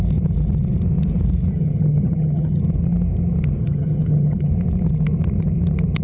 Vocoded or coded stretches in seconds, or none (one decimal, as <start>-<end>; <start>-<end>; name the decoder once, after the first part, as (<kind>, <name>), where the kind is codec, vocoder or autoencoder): 1.5-2.6 (vocoder, HiFi-GAN); 3.6-4.5